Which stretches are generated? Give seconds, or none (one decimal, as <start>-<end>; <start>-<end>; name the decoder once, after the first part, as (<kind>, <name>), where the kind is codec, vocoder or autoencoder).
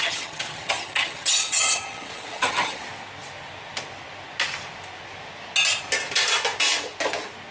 0.0-2.8 (vocoder, HiFi-GAN)